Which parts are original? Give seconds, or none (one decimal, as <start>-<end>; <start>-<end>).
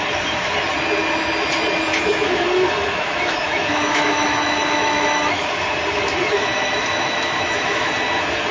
0.0-1.9; 5.6-6.2; 7.9-8.5